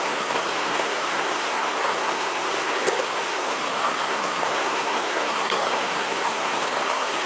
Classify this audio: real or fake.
fake